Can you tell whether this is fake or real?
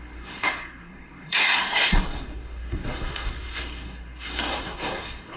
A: fake